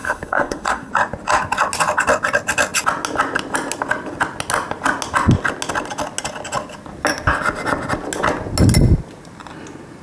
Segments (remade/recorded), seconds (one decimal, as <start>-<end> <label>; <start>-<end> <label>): 0.0-0.9 remade; 0.9-10.0 recorded